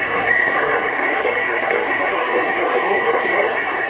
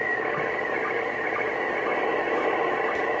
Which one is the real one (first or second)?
second